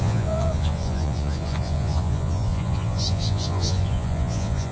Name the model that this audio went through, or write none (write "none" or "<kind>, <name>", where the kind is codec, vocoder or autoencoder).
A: vocoder, Vocos